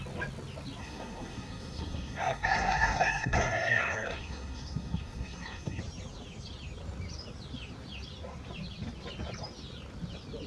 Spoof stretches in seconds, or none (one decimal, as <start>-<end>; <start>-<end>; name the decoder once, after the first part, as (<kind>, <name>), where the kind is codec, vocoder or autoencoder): 0.8-5.8 (codec, SNAC)